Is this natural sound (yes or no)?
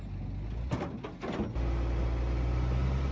yes